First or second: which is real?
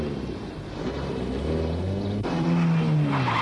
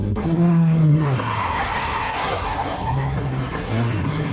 first